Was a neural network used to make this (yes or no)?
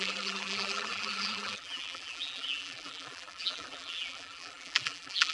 yes